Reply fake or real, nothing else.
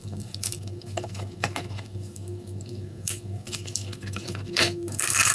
fake